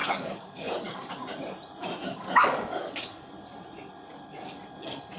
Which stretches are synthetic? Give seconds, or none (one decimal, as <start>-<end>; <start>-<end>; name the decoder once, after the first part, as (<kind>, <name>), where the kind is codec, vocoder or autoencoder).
0.0-1.1 (codec, DAC); 2.0-3.3